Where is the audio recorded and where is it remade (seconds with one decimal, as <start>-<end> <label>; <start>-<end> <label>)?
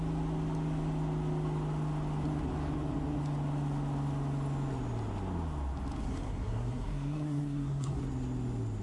0.0-6.0 recorded; 6.0-8.0 remade; 8.0-8.8 recorded